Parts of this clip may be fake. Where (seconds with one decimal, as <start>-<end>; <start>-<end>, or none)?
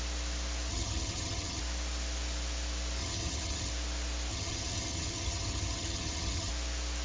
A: 0.7-1.6; 3.0-3.7; 4.3-6.5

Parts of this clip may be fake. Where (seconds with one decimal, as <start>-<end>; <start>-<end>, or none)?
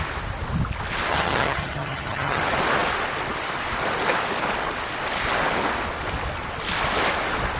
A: 1.1-2.4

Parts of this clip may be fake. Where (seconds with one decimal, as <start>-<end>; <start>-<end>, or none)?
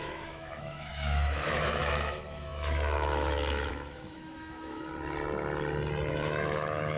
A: 0.0-4.9; 6.1-7.0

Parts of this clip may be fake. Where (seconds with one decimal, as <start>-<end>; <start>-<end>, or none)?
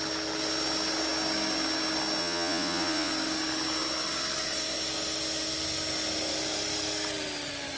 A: 2.2-3.1